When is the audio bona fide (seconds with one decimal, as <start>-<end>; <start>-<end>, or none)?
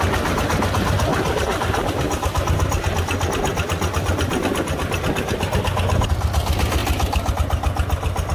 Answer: 0.0-8.3